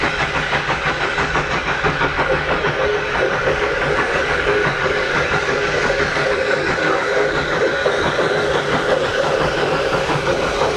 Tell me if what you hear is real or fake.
fake